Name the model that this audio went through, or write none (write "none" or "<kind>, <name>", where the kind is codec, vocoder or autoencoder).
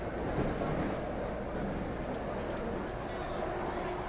none